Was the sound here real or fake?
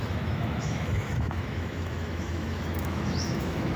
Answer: fake